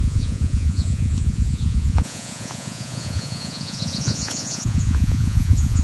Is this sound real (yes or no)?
no